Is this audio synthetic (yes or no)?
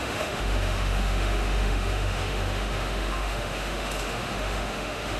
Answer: yes